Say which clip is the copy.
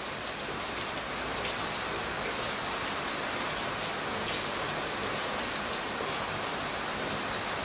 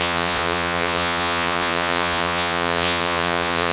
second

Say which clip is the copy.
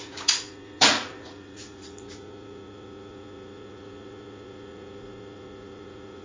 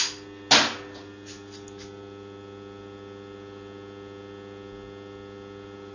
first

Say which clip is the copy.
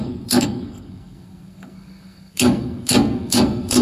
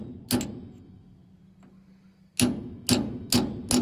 first